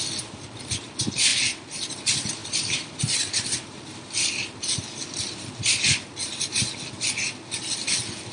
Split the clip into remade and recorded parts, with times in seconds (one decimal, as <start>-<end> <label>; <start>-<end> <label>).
0.0-8.3 recorded